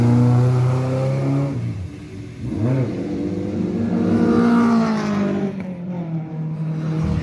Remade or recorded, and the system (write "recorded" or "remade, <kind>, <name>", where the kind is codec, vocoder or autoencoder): recorded